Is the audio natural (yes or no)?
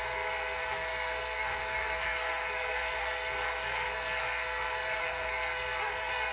no